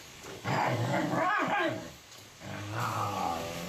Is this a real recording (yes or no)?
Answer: no